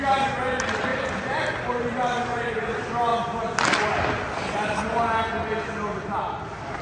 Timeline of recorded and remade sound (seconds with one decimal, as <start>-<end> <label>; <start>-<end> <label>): 0.0-3.1 remade; 3.1-4.3 recorded; 4.3-4.9 remade; 4.9-6.0 recorded; 6.0-6.8 remade